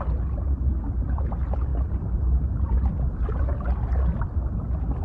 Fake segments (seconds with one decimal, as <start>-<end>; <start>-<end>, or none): none